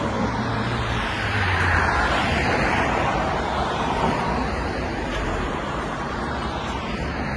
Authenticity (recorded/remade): remade